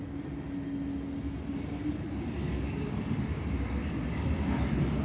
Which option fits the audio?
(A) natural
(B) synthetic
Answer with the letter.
A